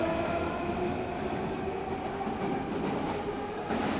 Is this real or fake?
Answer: real